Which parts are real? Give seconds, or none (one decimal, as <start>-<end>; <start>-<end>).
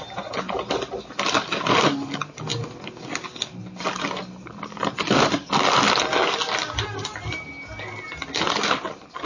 0.0-9.3